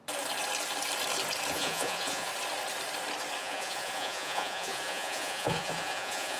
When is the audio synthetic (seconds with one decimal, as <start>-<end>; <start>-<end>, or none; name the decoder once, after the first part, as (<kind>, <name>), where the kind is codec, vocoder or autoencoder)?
1.5-2.3 (vocoder, Vocos); 3.4-6.4